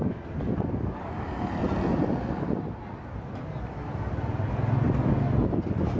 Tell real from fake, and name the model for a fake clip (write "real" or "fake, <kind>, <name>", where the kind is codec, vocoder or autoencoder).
real